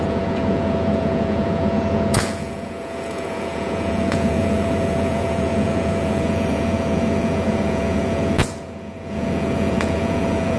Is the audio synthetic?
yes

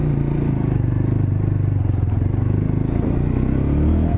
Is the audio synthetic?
no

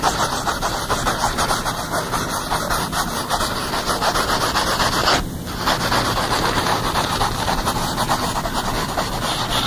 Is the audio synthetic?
no